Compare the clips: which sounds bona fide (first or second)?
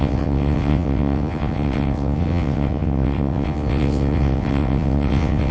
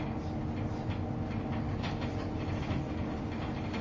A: second